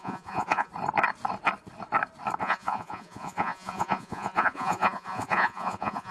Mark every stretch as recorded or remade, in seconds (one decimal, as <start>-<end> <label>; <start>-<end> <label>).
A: 0.0-0.7 remade; 0.7-2.4 recorded; 2.4-6.1 remade